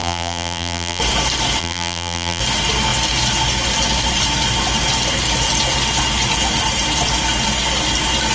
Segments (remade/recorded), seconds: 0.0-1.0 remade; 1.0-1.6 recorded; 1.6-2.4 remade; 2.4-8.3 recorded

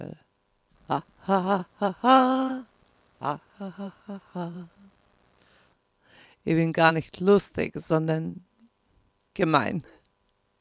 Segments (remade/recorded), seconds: 0.0-1.6 recorded; 1.6-5.1 remade; 5.1-10.6 recorded

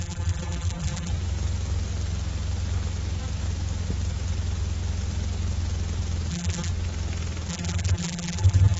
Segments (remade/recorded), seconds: 0.0-1.1 remade; 1.1-6.3 recorded; 6.3-6.7 remade; 6.7-7.5 recorded; 7.5-8.8 remade

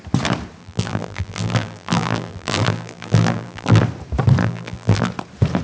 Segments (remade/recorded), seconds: 0.0-0.6 recorded; 0.6-3.8 remade; 3.8-4.4 recorded; 4.4-5.1 remade; 5.1-5.6 recorded

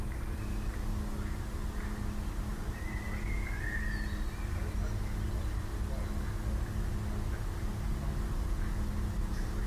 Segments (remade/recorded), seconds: 0.0-9.7 recorded